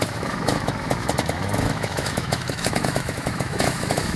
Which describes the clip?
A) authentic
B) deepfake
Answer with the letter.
B